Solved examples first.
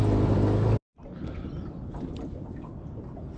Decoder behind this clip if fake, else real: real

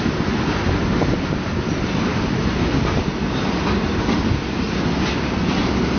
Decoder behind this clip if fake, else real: real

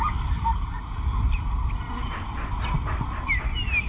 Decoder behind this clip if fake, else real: real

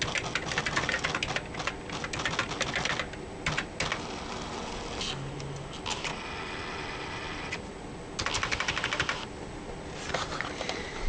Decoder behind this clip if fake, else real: real